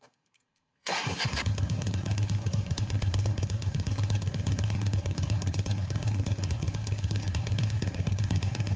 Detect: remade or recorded remade